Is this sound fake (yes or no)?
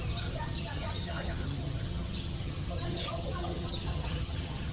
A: yes